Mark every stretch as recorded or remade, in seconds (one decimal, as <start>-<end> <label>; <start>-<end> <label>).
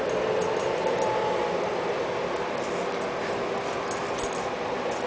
0.0-5.1 recorded